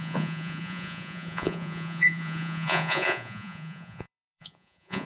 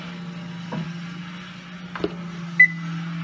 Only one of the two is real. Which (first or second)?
second